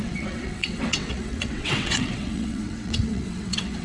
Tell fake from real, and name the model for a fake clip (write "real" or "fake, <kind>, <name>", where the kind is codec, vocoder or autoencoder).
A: fake, vocoder, WaveNeXt